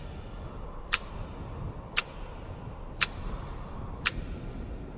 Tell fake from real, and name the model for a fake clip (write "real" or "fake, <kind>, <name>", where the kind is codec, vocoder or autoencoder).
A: real